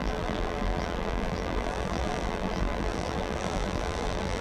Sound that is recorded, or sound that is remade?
remade